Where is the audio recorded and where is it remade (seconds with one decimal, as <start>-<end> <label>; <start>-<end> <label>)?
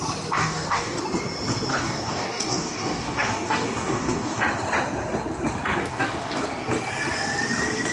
0.0-0.4 recorded; 0.4-1.0 remade; 1.0-1.7 recorded; 1.7-4.4 remade; 4.4-5.8 recorded; 5.8-6.4 remade; 6.4-7.9 recorded